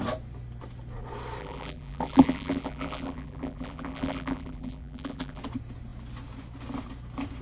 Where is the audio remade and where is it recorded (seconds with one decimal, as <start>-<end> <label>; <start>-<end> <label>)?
0.0-1.4 recorded; 1.4-5.4 remade; 5.4-7.4 recorded